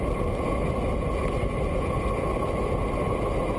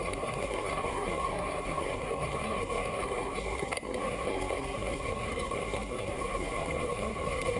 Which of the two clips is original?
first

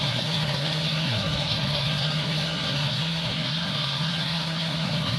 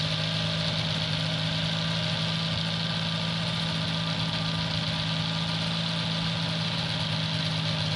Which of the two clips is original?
second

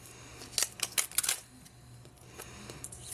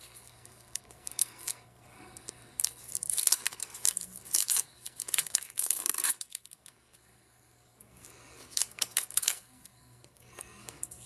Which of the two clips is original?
first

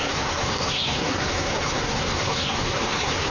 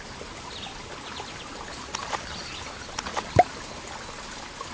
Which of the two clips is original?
second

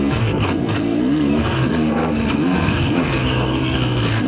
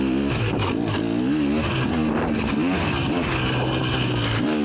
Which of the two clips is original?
second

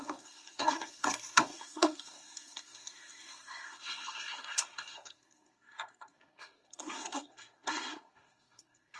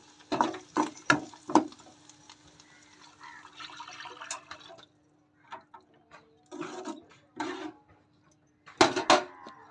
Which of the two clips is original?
second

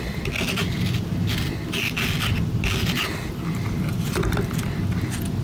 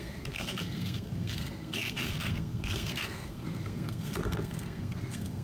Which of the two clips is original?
first